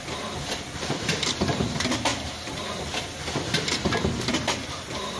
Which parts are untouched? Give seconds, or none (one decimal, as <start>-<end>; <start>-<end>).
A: 2.1-4.2